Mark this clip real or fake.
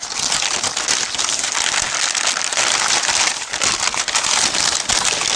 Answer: real